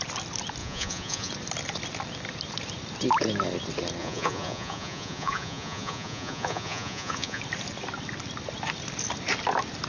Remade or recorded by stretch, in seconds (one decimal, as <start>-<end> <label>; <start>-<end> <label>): 0.0-0.6 recorded; 0.6-1.3 remade; 1.3-4.0 recorded; 4.0-7.4 remade; 7.4-9.9 recorded